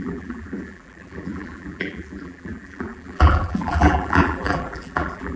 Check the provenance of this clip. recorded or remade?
remade